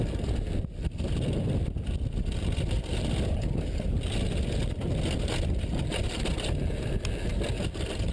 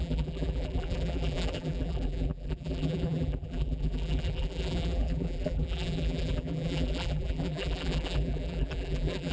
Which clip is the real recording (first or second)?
first